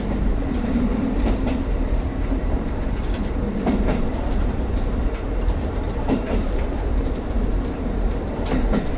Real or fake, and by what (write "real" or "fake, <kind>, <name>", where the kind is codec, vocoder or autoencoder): fake, vocoder, BigVGAN v2